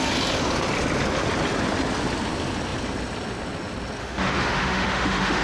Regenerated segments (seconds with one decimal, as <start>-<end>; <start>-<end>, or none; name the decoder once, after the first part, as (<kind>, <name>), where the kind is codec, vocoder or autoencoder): 4.0-5.4 (autoencoder, DAC-VAE)